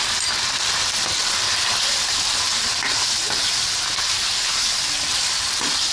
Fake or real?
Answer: real